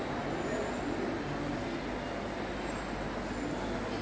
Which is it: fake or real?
real